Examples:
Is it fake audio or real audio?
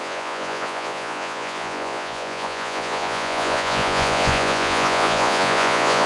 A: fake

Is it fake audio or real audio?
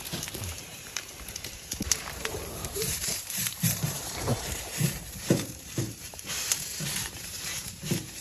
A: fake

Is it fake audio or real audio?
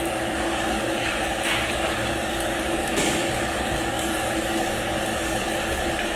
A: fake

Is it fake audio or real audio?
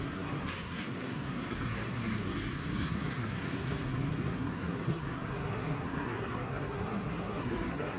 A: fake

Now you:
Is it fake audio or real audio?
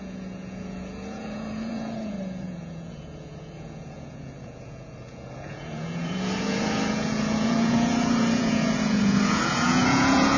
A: fake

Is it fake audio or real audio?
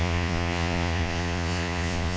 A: fake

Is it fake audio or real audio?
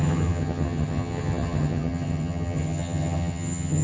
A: fake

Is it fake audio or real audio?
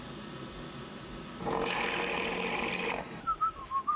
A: real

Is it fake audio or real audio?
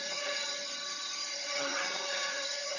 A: fake